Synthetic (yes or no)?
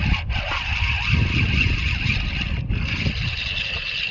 no